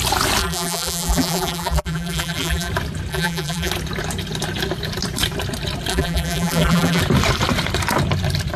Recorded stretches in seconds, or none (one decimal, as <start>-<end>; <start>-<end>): 0.0-0.4; 2.7-3.1; 3.7-5.9; 7.0-8.6